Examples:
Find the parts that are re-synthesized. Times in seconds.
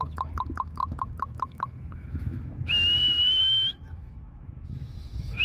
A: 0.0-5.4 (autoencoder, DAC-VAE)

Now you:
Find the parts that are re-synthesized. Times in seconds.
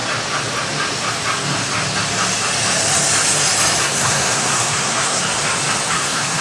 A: 3.8-5.2 (codec, SNAC); 5.9-6.4